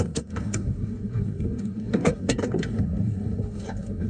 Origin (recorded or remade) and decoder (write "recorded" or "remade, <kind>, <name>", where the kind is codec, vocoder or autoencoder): remade, codec, SNAC